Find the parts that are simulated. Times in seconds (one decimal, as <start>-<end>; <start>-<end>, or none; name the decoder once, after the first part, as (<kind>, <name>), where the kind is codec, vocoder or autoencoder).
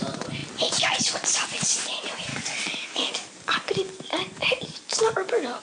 2.3-5.6 (codec, DAC)